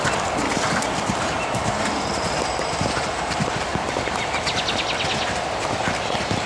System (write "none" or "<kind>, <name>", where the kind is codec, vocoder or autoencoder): none